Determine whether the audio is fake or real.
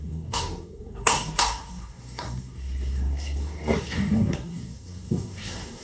fake